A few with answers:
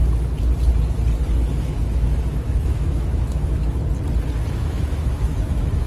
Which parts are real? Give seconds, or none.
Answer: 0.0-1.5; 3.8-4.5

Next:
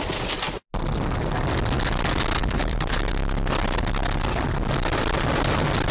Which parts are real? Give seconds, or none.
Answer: 0.0-2.4; 3.1-5.9